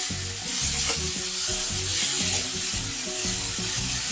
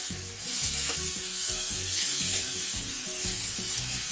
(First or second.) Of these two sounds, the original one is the first